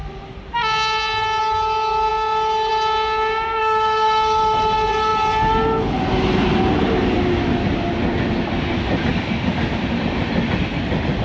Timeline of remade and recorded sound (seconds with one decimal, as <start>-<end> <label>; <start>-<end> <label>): 0.0-3.6 recorded; 3.6-4.4 remade; 4.4-11.2 recorded